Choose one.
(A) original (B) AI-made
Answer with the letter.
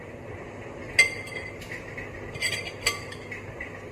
A